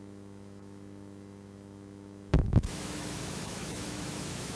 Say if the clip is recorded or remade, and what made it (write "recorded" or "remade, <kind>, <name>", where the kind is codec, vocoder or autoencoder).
remade, autoencoder, DAC-VAE